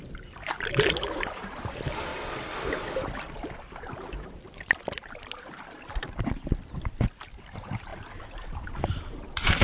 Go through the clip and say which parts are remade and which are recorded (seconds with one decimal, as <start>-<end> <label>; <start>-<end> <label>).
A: 0.0-2.1 remade; 2.1-7.4 recorded; 7.4-7.9 remade; 7.9-8.7 recorded; 8.7-9.6 remade